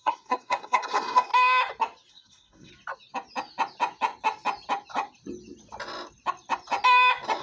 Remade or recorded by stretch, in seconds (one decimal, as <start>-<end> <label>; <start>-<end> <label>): 0.0-1.3 remade; 1.3-2.1 recorded; 2.1-2.7 remade; 2.7-7.4 recorded